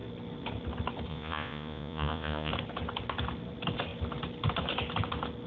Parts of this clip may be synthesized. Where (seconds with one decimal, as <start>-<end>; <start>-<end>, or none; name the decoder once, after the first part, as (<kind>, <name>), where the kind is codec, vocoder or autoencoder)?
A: 1.1-2.5 (vocoder, Vocos)